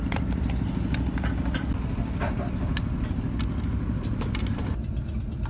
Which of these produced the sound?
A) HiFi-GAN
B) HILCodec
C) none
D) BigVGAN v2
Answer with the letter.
C